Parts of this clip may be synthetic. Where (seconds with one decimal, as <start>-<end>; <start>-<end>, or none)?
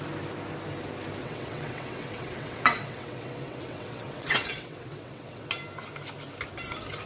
1.2-5.5